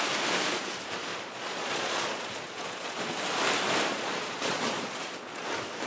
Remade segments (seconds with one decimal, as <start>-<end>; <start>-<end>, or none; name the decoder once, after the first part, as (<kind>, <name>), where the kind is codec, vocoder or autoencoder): 1.1-3.1 (vocoder, Vocos); 3.9-5.5